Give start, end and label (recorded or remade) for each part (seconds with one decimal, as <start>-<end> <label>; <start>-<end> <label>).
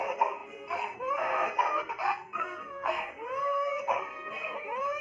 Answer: 0.0-5.0 remade